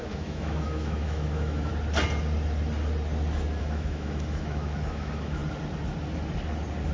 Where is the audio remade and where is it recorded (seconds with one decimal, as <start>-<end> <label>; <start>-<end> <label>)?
0.0-1.7 remade; 1.7-3.6 recorded; 3.6-5.4 remade; 5.4-6.9 recorded